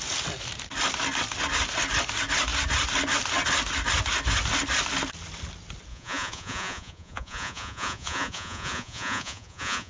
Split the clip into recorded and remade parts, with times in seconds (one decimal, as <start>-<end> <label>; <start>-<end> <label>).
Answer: 0.0-5.9 recorded; 5.9-9.9 remade